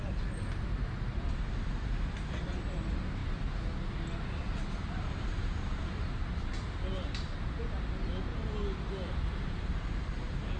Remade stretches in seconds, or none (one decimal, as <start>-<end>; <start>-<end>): none

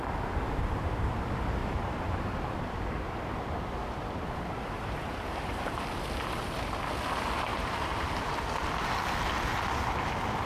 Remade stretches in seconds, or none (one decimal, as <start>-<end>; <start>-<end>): 1.6-5.7

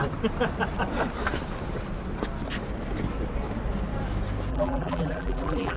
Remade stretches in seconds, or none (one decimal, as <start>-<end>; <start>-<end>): 4.5-5.8

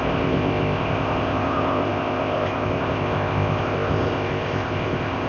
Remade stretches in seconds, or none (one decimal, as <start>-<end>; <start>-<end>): 0.0-5.3

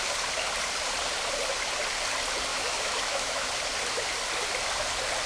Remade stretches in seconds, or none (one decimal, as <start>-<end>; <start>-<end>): 2.5-3.5

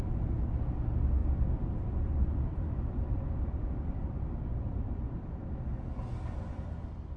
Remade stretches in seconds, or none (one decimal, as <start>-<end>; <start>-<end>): 1.2-5.5